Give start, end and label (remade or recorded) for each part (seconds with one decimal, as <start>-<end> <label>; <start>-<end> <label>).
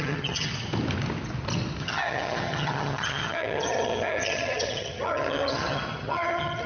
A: 0.0-0.5 remade; 0.5-1.8 recorded; 1.8-6.7 remade